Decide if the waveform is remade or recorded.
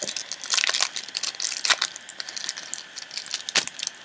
recorded